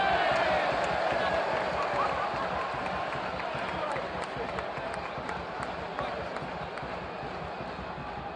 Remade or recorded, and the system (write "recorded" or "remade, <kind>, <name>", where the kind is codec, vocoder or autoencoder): recorded